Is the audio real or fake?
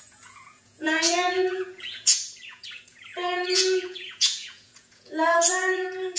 fake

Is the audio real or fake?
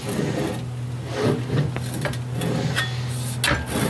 real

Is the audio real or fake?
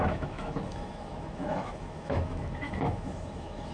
fake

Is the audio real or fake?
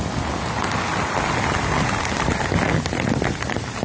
real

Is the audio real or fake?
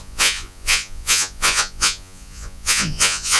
fake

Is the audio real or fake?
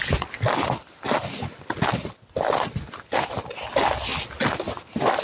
real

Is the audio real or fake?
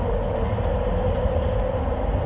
real